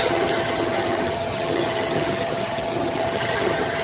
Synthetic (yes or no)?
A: yes